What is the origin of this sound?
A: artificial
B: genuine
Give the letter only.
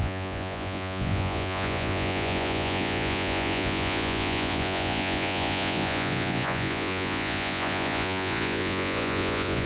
A